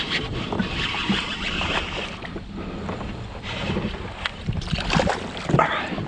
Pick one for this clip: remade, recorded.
recorded